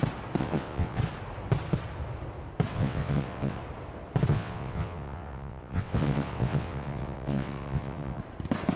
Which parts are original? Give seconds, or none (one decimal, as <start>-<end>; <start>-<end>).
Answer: 0.0-0.4; 1.0-2.7; 3.6-4.3; 8.2-8.8